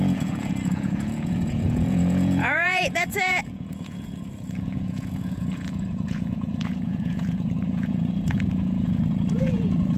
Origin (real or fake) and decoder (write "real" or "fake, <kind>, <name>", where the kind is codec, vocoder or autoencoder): fake, vocoder, Vocos